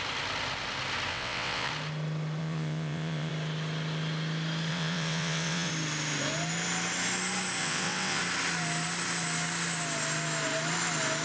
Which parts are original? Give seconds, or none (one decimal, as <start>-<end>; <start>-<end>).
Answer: 0.0-1.1; 1.7-2.4; 3.3-4.7; 5.7-7.6; 8.2-11.2